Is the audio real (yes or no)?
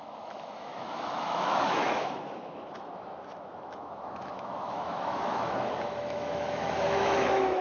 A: no